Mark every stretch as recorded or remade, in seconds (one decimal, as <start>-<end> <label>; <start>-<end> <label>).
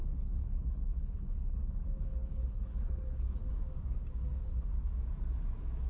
0.0-3.5 remade; 3.5-4.3 recorded; 4.3-4.9 remade; 4.9-5.9 recorded